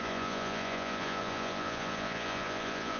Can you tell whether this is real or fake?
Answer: fake